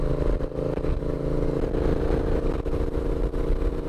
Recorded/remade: recorded